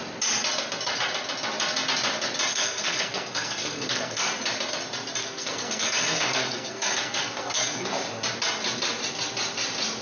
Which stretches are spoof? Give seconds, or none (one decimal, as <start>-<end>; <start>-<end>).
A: 2.5-4.3; 5.2-7.9